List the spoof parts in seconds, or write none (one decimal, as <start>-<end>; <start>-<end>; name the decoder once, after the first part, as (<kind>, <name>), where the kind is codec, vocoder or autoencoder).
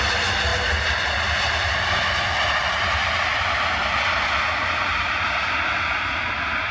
none